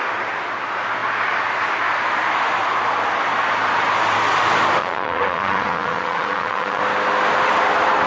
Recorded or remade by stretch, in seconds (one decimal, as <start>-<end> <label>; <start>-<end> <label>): 0.0-4.8 recorded; 4.8-6.8 remade; 6.8-8.1 recorded